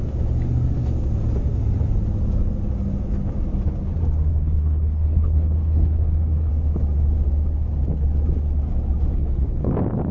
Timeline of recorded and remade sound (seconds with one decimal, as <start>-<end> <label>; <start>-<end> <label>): 0.0-4.3 recorded; 4.3-6.5 remade; 6.5-9.1 recorded; 9.1-9.7 remade; 9.7-10.1 recorded